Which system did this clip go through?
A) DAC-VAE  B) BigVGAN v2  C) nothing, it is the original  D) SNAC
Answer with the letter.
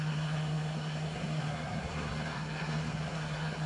D